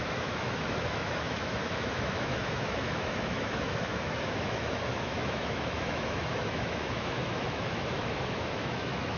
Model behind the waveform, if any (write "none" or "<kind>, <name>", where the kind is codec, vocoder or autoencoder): autoencoder, DAC-VAE